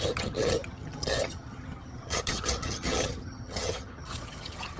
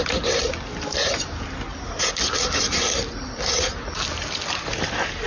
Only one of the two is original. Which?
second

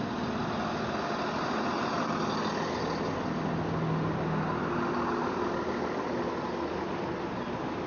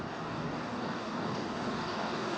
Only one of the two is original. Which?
first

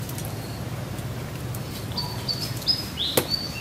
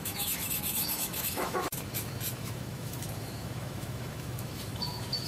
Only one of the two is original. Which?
first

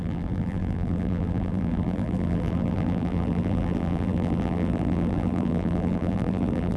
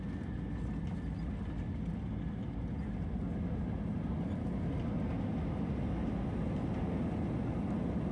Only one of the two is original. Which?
second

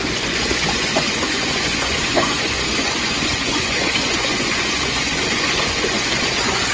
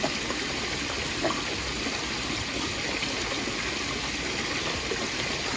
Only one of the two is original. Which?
second